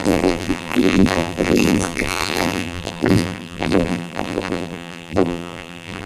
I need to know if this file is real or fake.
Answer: fake